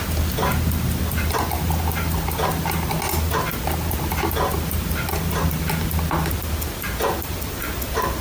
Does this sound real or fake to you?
real